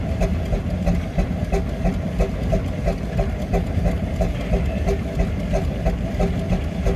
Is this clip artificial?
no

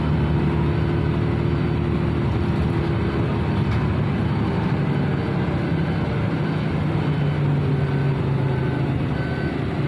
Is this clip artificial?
no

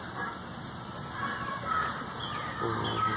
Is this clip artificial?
no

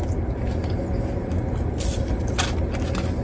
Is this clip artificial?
no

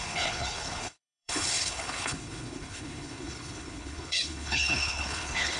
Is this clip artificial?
yes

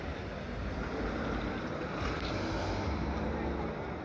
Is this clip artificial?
no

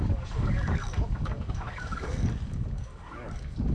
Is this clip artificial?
yes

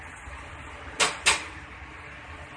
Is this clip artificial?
no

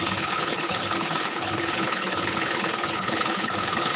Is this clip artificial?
yes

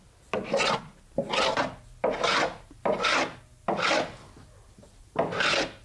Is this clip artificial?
no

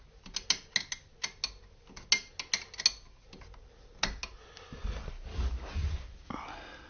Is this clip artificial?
no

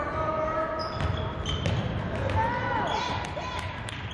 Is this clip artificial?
no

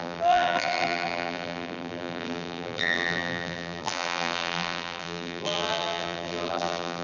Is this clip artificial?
yes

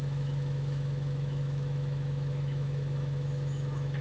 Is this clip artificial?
yes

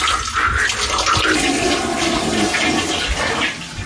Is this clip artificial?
no